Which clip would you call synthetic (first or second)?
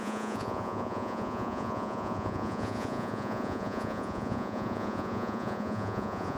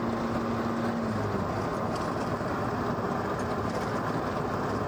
first